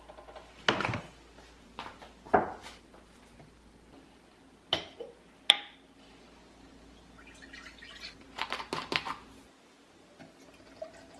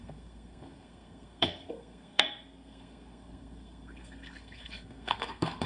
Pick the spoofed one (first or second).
second